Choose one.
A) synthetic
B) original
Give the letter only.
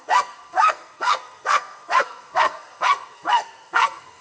A